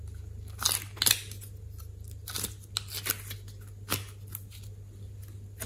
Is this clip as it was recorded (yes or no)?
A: yes